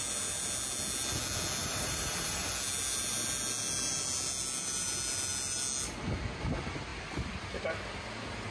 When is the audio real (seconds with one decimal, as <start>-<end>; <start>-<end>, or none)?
0.0-1.6; 2.5-8.5